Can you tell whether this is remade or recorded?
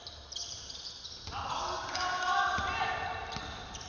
recorded